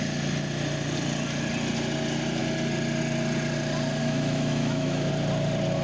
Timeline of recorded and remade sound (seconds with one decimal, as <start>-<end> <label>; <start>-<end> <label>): 0.0-4.0 recorded; 4.0-5.1 remade; 5.1-5.8 recorded